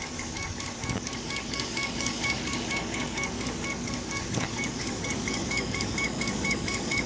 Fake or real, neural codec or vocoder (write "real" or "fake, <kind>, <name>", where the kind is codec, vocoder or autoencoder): fake, codec, DAC